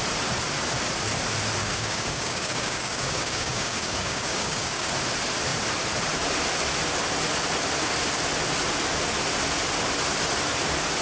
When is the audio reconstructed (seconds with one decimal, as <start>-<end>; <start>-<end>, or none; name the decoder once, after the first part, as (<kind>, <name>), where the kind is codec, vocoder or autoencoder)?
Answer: 1.6-4.9 (codec, DAC)